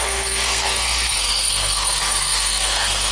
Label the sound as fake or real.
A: fake